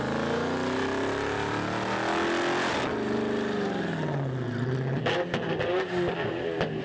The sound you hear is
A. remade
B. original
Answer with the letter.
B